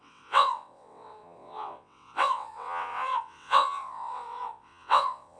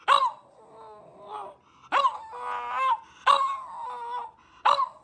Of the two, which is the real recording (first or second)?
second